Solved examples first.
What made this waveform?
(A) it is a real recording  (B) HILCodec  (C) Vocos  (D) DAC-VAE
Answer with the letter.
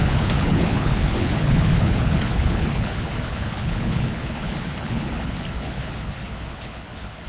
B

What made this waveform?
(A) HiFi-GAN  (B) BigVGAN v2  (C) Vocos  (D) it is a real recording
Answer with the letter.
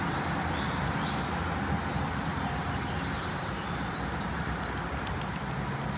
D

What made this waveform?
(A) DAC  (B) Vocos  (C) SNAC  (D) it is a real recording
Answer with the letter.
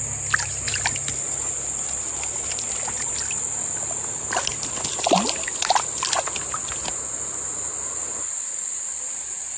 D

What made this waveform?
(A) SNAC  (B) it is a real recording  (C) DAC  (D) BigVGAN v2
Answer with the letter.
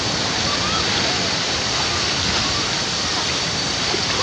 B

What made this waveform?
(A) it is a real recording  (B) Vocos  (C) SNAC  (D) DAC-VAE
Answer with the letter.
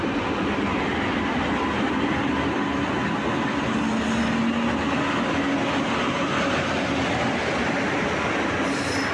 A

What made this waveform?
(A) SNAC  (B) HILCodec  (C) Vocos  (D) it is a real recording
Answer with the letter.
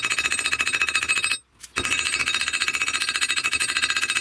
D